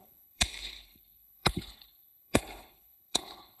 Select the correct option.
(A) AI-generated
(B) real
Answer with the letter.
A